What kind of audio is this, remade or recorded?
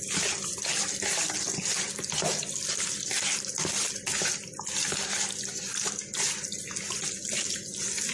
recorded